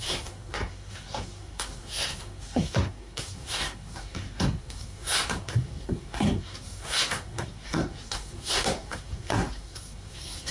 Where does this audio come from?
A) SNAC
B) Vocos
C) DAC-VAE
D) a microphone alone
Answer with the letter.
A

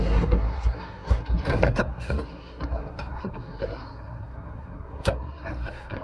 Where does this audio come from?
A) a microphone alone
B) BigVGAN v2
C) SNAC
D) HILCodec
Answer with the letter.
C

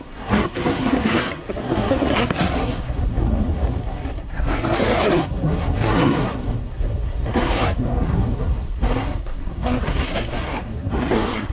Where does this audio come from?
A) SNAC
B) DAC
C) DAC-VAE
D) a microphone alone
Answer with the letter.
A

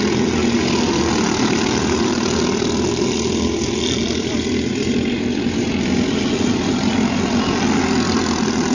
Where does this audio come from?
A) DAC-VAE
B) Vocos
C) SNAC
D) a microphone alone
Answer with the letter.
D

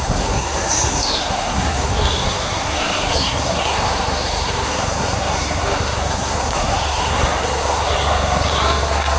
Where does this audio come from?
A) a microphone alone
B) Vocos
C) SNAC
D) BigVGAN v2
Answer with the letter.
C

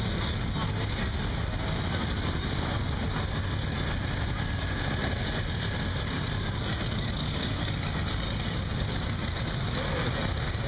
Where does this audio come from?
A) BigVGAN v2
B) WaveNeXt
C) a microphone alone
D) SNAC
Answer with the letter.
C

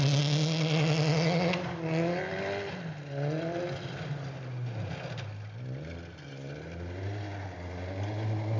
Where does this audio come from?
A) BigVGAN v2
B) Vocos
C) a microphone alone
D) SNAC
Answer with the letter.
C